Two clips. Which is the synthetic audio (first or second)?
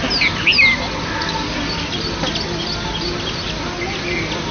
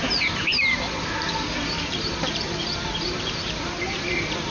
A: second